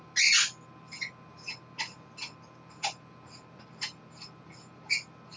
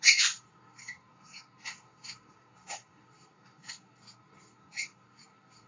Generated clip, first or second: second